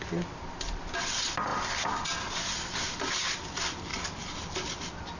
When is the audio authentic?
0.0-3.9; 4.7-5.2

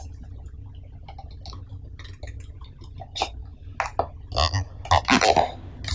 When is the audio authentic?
0.0-5.9

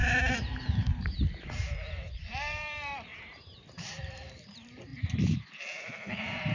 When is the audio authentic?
3.1-4.0

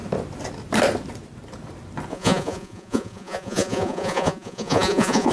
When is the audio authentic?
0.0-2.1

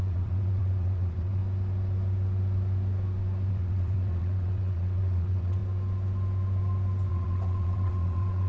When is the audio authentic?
1.4-3.5; 5.6-7.1

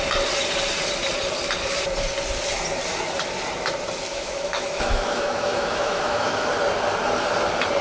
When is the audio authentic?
0.0-4.1; 6.5-7.8